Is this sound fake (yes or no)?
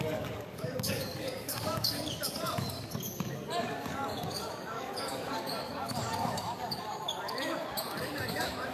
yes